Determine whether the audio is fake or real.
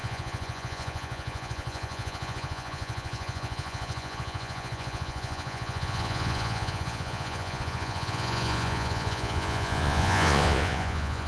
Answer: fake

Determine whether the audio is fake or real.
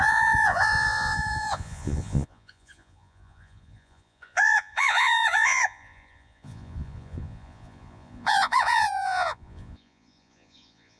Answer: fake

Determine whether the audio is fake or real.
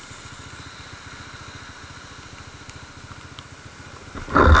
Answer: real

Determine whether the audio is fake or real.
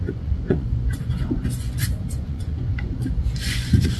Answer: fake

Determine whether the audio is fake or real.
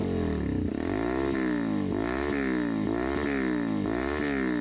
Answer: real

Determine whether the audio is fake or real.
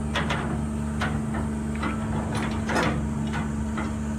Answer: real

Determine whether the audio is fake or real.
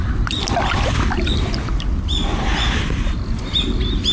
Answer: real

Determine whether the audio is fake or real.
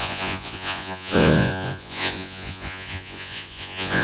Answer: fake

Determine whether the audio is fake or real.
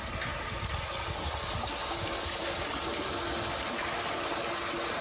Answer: real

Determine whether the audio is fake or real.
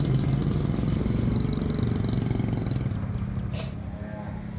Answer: real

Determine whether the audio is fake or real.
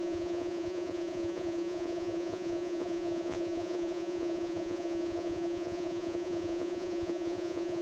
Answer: fake